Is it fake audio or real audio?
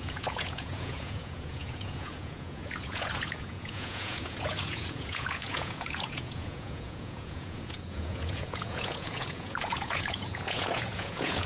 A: fake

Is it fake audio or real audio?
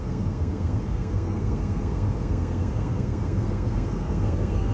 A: fake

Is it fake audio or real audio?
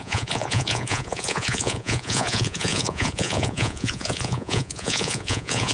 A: fake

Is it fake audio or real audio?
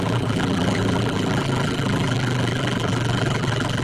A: fake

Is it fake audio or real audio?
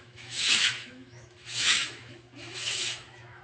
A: fake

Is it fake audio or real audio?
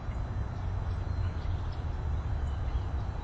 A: real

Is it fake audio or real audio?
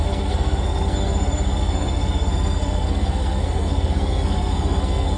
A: fake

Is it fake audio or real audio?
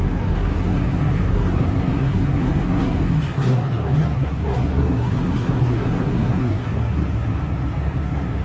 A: fake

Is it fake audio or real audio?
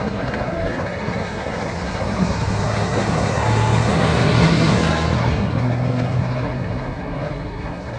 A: fake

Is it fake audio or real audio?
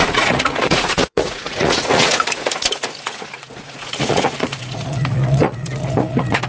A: fake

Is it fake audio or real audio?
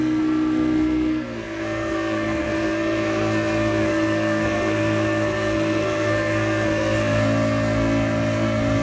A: fake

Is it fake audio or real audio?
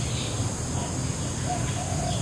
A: real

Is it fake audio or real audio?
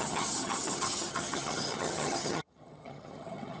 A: fake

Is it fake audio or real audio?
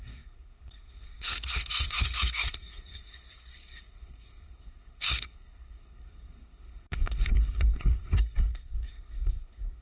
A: fake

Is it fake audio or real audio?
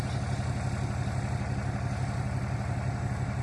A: real